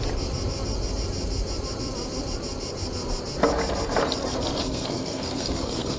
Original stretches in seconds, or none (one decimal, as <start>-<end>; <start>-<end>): 0.0-4.6